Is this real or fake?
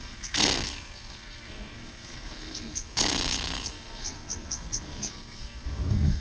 fake